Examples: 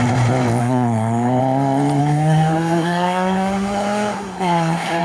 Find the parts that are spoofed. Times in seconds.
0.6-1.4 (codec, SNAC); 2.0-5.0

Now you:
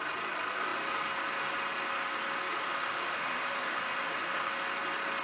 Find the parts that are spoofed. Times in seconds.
2.5-4.5 (autoencoder, DAC-VAE)

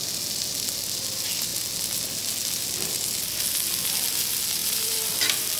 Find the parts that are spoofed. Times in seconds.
2.4-3.0 (vocoder, BigVGAN v2); 4.6-5.6

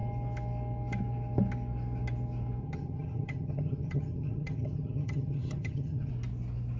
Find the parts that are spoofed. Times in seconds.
2.6-6.1 (vocoder, HiFi-GAN)